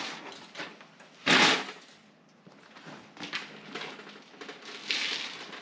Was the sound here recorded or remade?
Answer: recorded